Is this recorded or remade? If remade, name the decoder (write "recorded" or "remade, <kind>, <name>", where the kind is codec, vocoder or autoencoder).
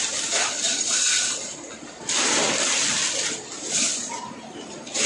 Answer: recorded